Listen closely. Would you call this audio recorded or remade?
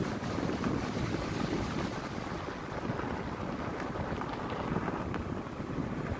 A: recorded